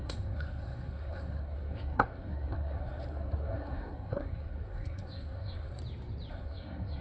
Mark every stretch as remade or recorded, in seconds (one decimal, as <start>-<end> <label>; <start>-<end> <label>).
0.0-5.8 remade; 5.8-6.3 recorded; 6.3-7.0 remade